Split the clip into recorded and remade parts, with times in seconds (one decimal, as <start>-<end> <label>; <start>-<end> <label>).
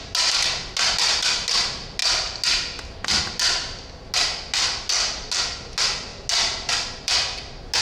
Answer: 0.0-7.8 recorded